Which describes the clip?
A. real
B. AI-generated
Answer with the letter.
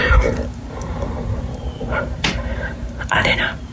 B